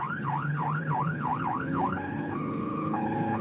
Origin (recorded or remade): remade